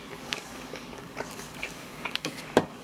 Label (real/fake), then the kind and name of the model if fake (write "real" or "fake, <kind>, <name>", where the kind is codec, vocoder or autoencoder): fake, codec, DAC